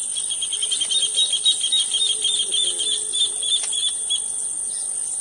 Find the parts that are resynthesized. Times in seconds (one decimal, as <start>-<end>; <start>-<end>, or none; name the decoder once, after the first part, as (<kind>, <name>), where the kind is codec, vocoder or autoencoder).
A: 1.2-3.0 (vocoder, BigVGAN v2)

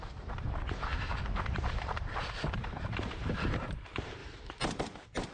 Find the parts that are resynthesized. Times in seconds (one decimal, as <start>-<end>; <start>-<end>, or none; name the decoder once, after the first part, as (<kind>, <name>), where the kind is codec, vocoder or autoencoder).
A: 0.0-5.3 (vocoder, BigVGAN v2)

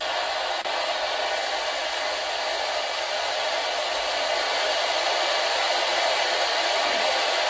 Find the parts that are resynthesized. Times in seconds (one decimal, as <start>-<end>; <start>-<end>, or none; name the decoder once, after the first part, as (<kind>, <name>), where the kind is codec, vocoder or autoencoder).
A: 5.9-7.1 (vocoder, BigVGAN v2)